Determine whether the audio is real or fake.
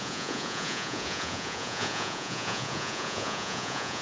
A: fake